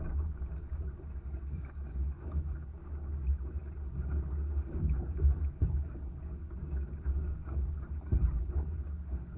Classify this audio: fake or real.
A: fake